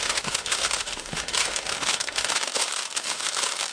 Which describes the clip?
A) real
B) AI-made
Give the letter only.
B